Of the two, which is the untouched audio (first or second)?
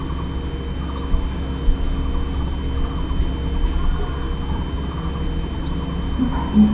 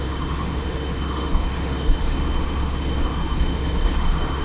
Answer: first